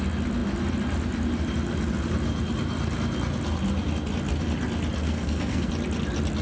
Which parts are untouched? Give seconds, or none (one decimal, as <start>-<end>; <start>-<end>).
0.0-5.0; 5.7-6.4